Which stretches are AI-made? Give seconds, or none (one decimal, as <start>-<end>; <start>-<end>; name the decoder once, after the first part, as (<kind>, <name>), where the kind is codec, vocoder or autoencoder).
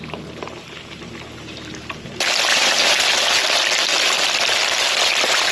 2.5-3.4 (vocoder, BigVGAN v2)